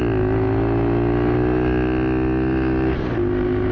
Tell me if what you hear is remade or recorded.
recorded